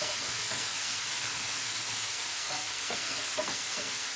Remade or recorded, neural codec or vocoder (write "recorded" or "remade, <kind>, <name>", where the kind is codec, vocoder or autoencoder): remade, codec, SNAC